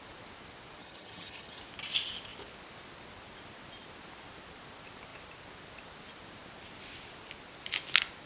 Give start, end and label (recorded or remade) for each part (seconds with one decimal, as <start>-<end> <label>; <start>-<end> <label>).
0.0-0.8 recorded; 0.8-1.6 remade; 1.6-8.3 recorded

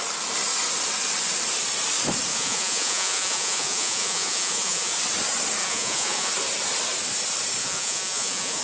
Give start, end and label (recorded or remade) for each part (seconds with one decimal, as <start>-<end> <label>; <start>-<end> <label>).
0.0-2.3 recorded; 2.3-4.9 remade; 4.9-5.6 recorded; 5.6-6.3 remade; 6.3-7.6 recorded; 7.6-8.6 remade